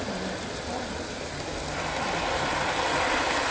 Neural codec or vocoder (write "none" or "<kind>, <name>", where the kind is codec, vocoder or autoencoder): none